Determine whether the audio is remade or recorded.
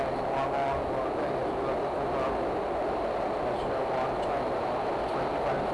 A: recorded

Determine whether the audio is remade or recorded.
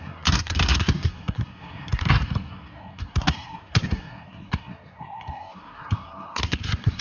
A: remade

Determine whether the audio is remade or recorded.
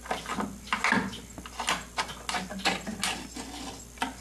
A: recorded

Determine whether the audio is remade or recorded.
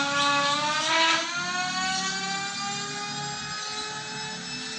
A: recorded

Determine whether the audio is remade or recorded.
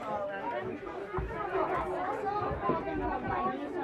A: recorded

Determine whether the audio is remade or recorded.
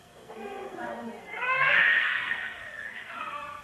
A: remade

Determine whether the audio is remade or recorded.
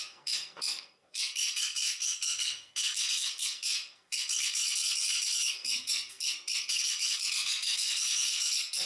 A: remade